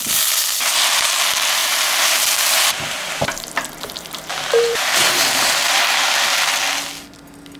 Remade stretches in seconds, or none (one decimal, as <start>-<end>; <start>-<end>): 1.6-5.5